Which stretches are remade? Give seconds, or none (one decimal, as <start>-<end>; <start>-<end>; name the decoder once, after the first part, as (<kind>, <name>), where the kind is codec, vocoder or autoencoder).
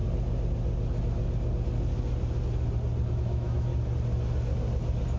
3.1-3.7 (autoencoder, DAC-VAE)